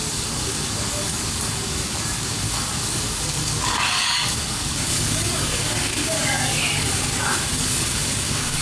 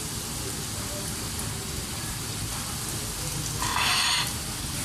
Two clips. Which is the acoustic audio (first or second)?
second